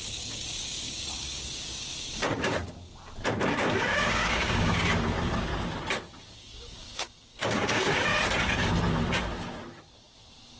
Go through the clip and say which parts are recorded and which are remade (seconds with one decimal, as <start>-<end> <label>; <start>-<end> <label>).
0.0-2.6 remade; 2.6-3.8 recorded; 3.8-5.5 remade; 5.5-6.2 recorded; 6.2-8.1 remade; 8.1-10.6 recorded